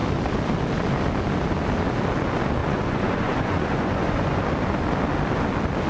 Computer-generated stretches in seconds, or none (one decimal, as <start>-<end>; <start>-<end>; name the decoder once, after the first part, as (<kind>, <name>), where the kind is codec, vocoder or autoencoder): 2.6-4.4 (vocoder, Vocos)